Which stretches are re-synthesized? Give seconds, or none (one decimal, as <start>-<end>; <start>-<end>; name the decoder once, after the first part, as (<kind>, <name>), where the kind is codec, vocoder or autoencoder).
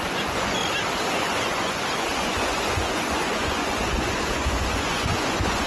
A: 0.0-0.6 (vocoder, Vocos); 1.1-5.7